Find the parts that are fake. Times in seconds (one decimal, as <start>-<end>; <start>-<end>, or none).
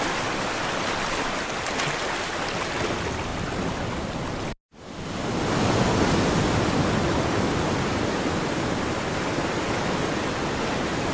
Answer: none